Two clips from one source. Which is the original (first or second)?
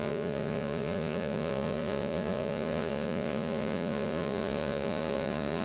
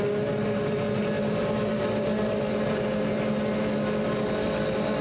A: second